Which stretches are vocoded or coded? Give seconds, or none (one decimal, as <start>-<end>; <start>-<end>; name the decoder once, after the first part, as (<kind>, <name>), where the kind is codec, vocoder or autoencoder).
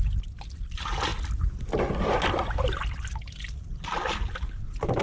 none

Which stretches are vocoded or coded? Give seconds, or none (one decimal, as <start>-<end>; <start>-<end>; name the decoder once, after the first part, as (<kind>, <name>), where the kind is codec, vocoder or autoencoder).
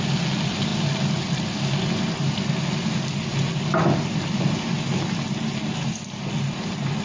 none